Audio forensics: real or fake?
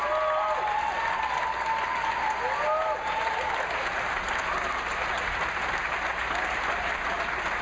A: real